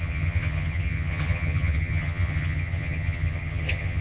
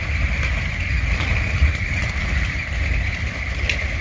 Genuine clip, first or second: second